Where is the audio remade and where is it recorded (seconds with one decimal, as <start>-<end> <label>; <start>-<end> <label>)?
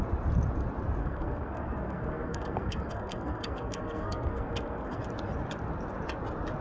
0.0-1.0 recorded; 1.0-5.0 remade; 5.0-6.6 recorded